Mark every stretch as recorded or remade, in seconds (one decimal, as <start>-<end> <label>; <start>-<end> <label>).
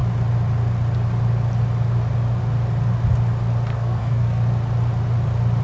0.0-3.7 recorded; 3.7-4.4 remade; 4.4-5.6 recorded